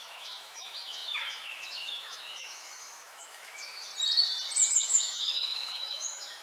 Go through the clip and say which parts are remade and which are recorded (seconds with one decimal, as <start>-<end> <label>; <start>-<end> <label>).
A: 0.0-3.9 remade; 3.9-4.7 recorded; 4.7-6.4 remade